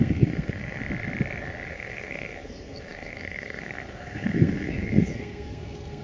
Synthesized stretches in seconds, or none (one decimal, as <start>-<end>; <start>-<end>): 0.0-0.8; 1.7-6.0